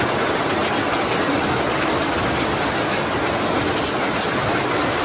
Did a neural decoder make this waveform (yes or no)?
no